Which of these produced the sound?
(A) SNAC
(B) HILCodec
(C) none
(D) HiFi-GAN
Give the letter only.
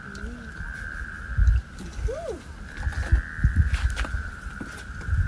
C